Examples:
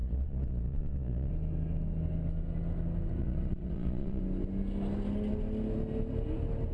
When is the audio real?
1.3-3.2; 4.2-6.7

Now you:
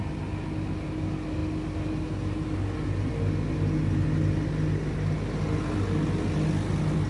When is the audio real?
0.0-7.1